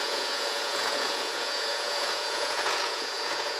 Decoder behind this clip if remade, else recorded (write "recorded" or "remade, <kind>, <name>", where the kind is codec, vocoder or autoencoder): remade, vocoder, Vocos